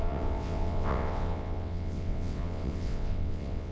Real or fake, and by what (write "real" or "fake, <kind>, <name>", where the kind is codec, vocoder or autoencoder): fake, vocoder, WaveNeXt